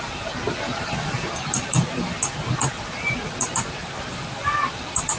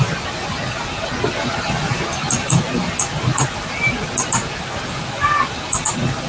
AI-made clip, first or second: first